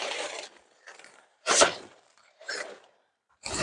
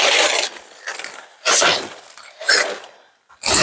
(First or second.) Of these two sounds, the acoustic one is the second